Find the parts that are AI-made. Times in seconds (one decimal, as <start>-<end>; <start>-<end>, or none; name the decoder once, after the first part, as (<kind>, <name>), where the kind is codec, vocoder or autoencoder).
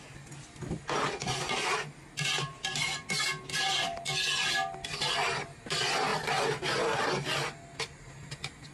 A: none